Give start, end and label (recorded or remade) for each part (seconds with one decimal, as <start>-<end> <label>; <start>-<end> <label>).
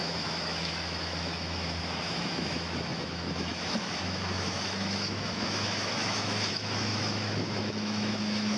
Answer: 0.0-8.6 remade